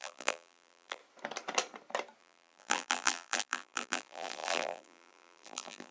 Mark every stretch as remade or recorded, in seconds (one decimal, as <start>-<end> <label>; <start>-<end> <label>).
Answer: 0.0-1.0 remade; 1.0-2.2 recorded; 2.2-5.9 remade